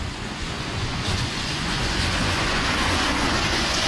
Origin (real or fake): fake